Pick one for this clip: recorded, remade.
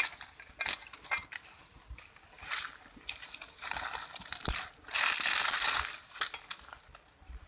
recorded